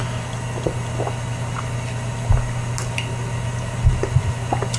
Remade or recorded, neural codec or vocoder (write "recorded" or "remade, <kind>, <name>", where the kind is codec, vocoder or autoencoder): recorded